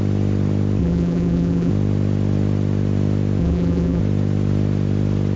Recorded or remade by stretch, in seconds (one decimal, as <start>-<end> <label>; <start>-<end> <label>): 0.0-0.8 recorded; 0.8-1.7 remade; 1.7-3.4 recorded; 3.4-4.0 remade; 4.0-5.4 recorded